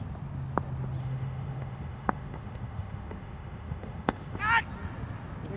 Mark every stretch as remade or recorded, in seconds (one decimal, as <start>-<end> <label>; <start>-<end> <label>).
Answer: 0.0-1.0 recorded; 1.0-4.4 remade; 4.4-5.6 recorded